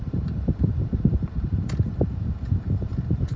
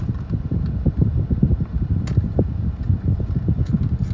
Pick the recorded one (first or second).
second